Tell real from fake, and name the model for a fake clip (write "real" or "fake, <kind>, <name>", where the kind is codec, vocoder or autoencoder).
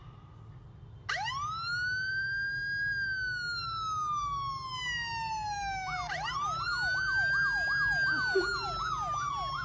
real